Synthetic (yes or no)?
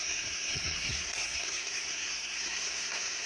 yes